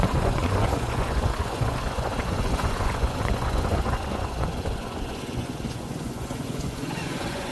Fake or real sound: fake